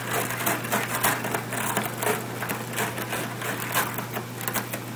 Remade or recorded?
recorded